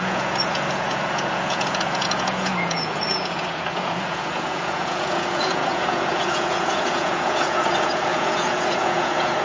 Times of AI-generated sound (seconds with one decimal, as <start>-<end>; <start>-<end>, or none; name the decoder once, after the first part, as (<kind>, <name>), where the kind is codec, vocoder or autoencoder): 0.0-9.4 (vocoder, Vocos)